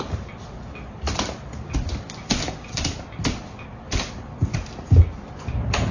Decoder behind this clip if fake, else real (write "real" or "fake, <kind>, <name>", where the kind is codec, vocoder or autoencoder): real